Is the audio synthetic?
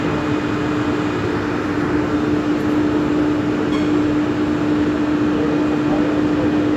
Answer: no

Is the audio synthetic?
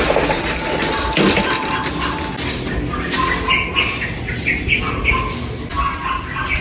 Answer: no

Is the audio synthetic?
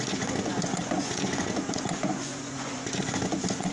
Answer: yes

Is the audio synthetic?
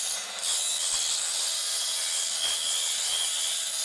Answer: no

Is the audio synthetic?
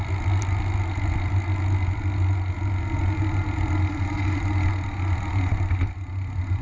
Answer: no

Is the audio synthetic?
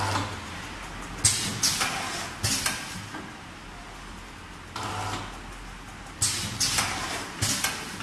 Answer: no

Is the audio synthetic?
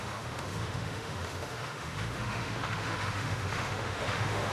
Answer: yes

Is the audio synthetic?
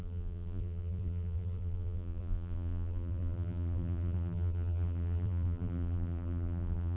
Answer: yes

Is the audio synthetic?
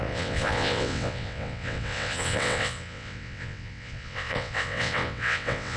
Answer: yes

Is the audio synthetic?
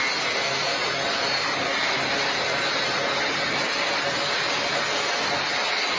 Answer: no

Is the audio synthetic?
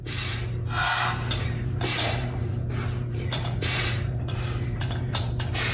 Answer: yes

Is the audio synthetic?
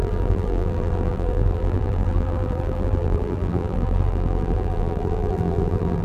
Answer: yes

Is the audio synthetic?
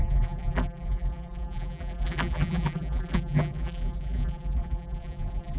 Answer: yes